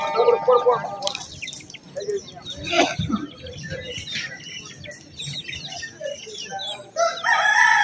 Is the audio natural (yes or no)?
yes